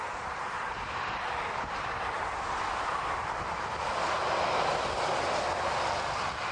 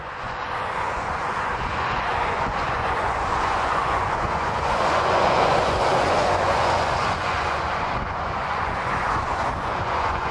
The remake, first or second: second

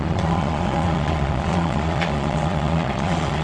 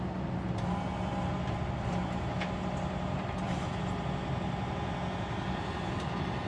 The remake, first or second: first